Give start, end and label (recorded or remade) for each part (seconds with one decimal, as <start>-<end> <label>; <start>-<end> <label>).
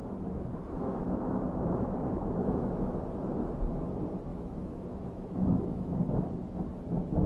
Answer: 0.0-2.9 remade; 2.9-4.3 recorded; 4.3-6.0 remade; 6.0-7.3 recorded